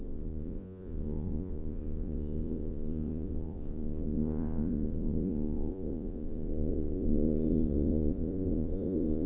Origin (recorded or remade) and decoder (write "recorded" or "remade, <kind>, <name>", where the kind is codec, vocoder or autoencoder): remade, vocoder, Vocos